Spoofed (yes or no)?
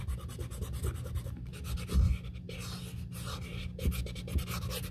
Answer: no